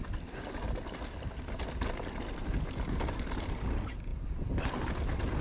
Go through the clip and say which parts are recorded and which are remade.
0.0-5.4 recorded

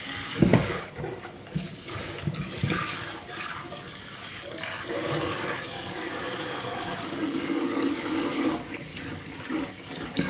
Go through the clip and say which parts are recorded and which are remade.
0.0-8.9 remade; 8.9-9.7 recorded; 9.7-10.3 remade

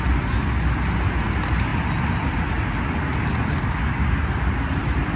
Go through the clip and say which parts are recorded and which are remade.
0.0-5.2 recorded